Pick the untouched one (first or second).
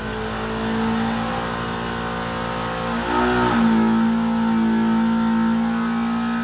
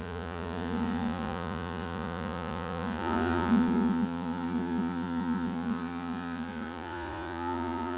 first